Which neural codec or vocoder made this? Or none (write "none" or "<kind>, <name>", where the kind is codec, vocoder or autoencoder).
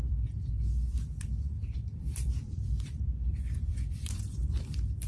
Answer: vocoder, BigVGAN v2